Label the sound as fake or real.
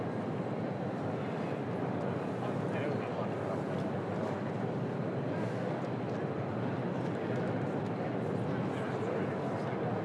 real